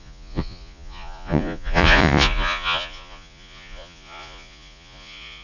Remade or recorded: remade